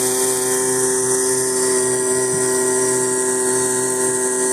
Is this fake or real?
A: real